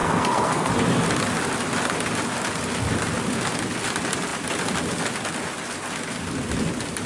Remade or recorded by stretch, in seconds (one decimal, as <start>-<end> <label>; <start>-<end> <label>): 0.0-0.7 remade; 0.7-7.1 recorded